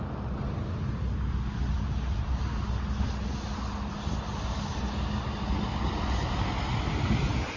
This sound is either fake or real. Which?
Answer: real